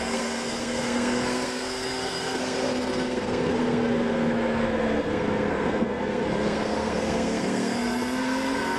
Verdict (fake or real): fake